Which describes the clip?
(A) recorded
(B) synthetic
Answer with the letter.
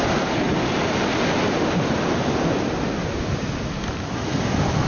A